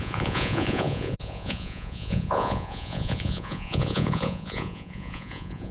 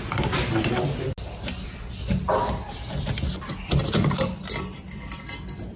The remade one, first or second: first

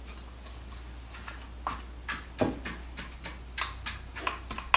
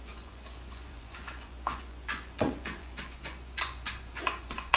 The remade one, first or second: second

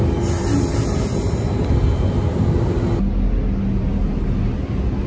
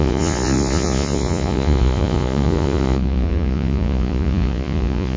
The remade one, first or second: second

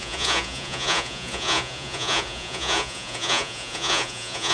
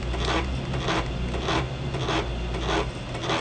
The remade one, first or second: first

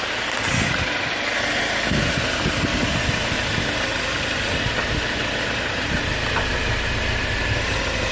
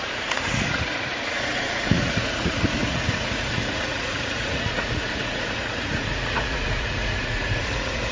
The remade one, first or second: second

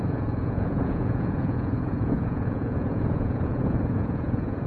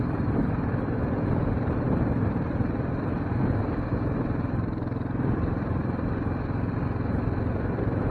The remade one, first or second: first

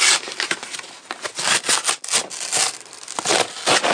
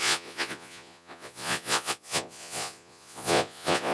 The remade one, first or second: second